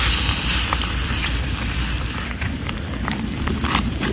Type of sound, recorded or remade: remade